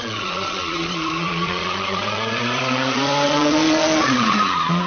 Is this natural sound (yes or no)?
no